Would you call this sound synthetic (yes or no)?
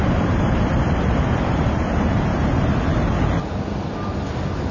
no